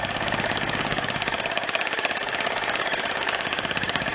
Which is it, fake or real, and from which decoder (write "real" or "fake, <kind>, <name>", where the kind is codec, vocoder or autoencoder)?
fake, codec, DAC